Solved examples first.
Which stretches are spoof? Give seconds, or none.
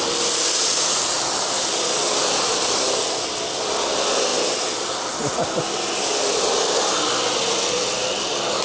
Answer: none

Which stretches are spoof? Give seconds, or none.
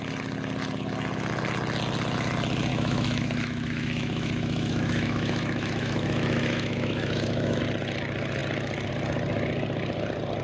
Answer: 2.7-7.6 (autoencoder, DAC-VAE)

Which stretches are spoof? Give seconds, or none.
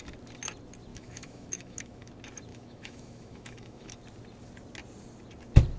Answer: 0.9-2.1 (autoencoder, DAC-VAE); 2.5-3.9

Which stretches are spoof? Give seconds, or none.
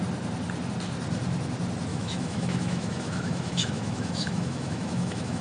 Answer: 1.9-5.4 (autoencoder, DAC-VAE)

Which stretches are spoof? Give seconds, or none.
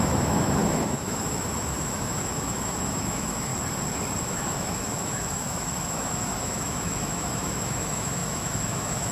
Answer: 0.0-3.5 (autoencoder, DAC-VAE); 4.2-9.1